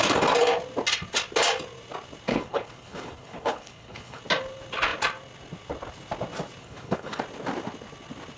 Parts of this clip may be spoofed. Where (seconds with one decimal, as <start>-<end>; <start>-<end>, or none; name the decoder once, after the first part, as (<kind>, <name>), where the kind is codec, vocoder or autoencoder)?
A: 2.3-4.2 (codec, HILCodec); 6.6-7.2